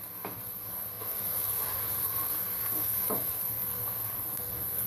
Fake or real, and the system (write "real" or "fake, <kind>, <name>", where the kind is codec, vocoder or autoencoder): fake, codec, SNAC